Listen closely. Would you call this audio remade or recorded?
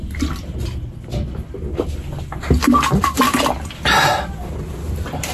recorded